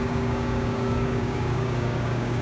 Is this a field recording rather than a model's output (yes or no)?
no